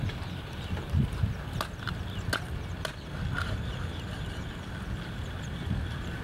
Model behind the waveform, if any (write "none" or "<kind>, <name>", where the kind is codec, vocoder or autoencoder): none